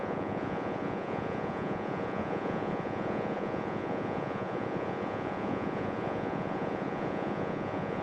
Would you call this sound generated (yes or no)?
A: yes